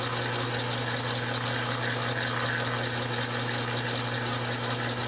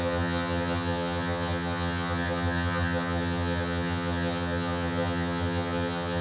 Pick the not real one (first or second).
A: second